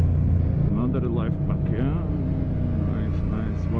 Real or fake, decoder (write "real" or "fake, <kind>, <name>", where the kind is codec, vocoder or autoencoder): real